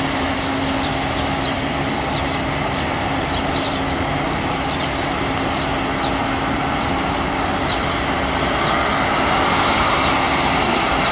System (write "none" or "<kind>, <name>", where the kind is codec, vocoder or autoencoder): none